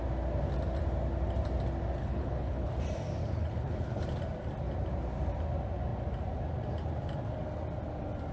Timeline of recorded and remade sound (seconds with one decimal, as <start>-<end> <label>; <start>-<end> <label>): 0.0-2.0 recorded; 2.0-2.7 remade; 2.7-3.2 recorded; 3.2-4.0 remade; 4.0-8.3 recorded